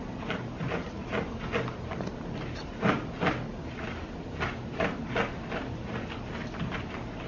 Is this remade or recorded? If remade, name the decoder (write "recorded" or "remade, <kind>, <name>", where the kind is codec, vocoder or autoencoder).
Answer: recorded